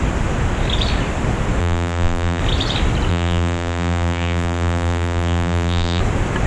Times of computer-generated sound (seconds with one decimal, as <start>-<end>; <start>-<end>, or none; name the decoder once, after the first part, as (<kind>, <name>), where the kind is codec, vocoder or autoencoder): 1.6-2.4 (vocoder, BigVGAN v2); 3.1-6.0